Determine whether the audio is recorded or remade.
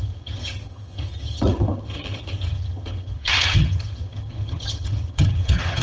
remade